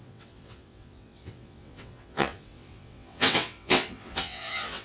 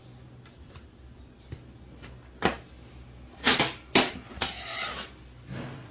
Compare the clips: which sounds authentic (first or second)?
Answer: second